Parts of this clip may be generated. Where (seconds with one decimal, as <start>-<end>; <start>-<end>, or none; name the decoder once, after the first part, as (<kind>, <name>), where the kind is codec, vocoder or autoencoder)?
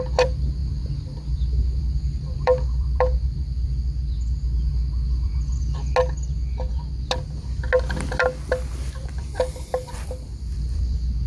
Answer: 0.0-0.6 (vocoder, BigVGAN v2); 1.3-4.0; 9.1-11.3